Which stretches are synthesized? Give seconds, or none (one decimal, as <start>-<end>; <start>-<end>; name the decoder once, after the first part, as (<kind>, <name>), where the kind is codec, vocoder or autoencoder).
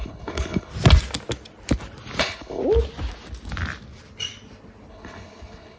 0.0-0.7 (codec, HILCodec); 2.2-2.6; 4.9-5.8